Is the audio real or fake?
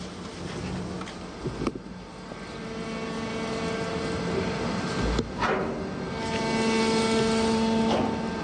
real